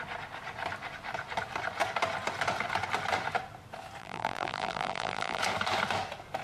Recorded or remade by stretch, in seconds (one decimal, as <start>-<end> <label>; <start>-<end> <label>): 0.0-4.0 recorded; 4.0-5.4 remade; 5.4-6.4 recorded